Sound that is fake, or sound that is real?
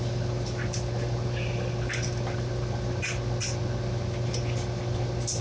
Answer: real